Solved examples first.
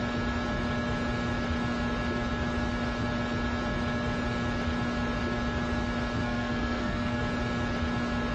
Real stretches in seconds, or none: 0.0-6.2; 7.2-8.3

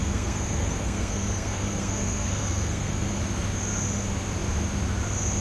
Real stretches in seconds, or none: 3.2-5.4

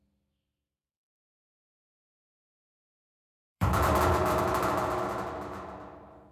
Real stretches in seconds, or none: 0.0-3.4; 4.4-6.3

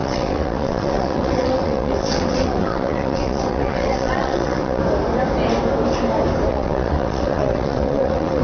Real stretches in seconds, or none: 4.8-6.5

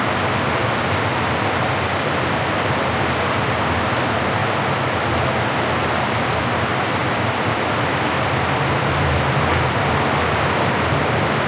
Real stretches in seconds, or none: 0.0-0.6; 2.6-7.0; 9.4-11.5

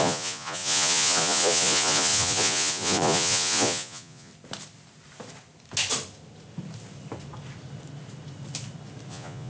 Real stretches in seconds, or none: 4.3-9.1